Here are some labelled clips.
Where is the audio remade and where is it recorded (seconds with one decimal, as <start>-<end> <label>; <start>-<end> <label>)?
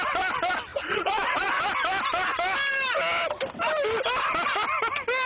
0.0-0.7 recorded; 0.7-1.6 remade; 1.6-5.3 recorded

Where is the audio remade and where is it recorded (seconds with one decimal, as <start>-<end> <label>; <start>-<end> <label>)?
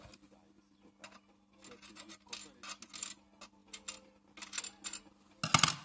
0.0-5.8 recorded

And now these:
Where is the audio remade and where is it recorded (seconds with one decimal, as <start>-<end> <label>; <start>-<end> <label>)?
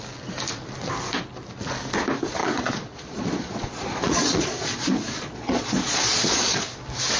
0.0-2.4 recorded; 2.4-6.7 remade; 6.7-7.2 recorded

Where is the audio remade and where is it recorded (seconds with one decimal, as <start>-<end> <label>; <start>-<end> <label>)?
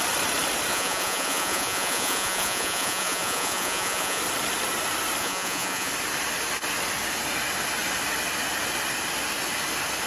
0.0-0.7 recorded; 0.7-4.2 remade; 4.2-5.2 recorded; 5.2-5.9 remade; 5.9-10.1 recorded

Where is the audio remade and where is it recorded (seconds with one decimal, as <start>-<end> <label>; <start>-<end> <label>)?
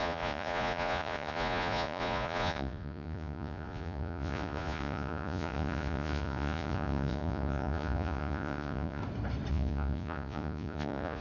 0.0-9.0 remade; 9.0-9.5 recorded; 9.5-11.2 remade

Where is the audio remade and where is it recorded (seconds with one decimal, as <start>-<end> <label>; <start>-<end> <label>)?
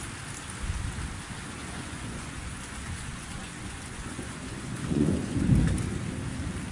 0.0-1.6 recorded; 1.6-5.4 remade; 5.4-6.7 recorded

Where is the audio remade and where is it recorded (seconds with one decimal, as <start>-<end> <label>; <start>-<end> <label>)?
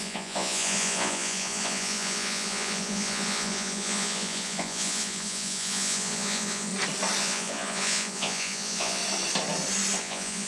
0.0-6.7 remade; 6.7-7.2 recorded; 7.2-9.0 remade; 9.0-10.0 recorded; 10.0-10.5 remade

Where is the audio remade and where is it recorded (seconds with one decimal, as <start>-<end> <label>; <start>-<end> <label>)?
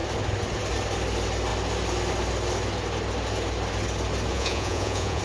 0.0-4.3 recorded; 4.3-5.2 remade